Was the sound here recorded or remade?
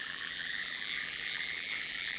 remade